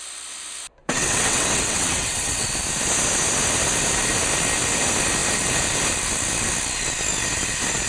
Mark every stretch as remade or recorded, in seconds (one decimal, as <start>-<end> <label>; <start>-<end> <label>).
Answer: 0.0-0.8 recorded; 0.8-2.5 remade; 2.5-7.9 recorded